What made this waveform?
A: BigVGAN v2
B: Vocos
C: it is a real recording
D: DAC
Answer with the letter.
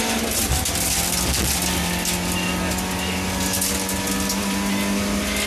C